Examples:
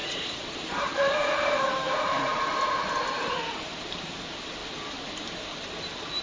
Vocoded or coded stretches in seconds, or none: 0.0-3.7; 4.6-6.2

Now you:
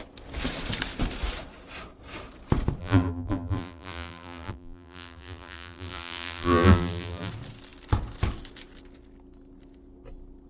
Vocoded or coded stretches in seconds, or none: 2.8-7.3

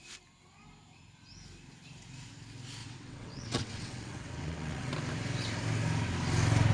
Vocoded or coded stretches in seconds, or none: 2.8-4.9

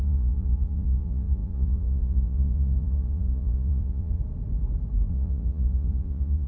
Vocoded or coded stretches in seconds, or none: 0.0-4.2; 5.1-6.5

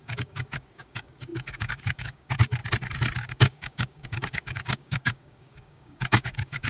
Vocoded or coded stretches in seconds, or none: 0.0-2.6; 3.3-6.7

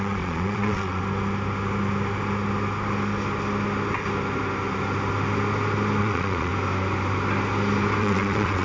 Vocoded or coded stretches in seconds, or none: 0.0-1.0; 6.0-6.5; 8.0-8.6